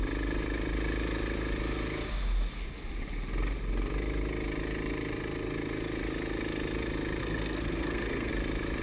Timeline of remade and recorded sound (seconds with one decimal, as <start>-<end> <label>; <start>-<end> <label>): 0.0-7.2 recorded; 7.2-8.3 remade; 8.3-8.8 recorded